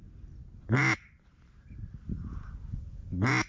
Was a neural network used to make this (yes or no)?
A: no